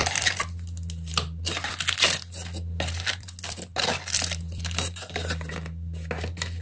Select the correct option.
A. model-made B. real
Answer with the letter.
B